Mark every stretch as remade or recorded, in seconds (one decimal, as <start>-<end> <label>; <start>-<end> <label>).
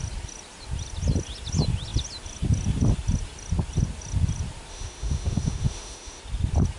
0.0-4.7 recorded; 4.7-6.2 remade; 6.2-6.8 recorded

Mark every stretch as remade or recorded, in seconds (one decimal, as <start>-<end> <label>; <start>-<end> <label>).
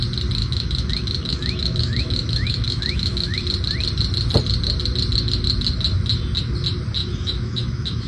0.0-0.4 recorded; 0.4-3.4 remade; 3.4-7.0 recorded; 7.0-8.1 remade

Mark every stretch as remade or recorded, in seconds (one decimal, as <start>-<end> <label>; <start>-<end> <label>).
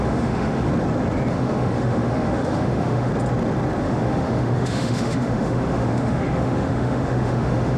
0.0-0.7 remade; 0.7-1.3 recorded; 1.3-3.1 remade; 3.1-3.8 recorded; 3.8-7.8 remade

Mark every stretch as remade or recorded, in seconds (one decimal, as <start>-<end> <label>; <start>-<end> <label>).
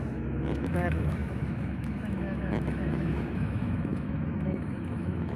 0.0-5.4 remade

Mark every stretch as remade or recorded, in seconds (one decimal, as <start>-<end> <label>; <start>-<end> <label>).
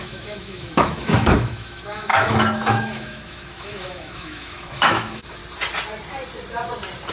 0.0-5.4 remade; 5.4-7.1 recorded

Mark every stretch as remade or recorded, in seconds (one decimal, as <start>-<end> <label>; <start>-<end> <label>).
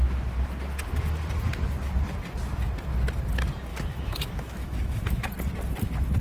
0.0-3.7 recorded; 3.7-5.3 remade; 5.3-6.2 recorded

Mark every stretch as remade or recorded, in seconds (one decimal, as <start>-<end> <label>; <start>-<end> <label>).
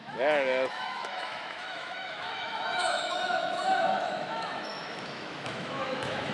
0.0-6.3 remade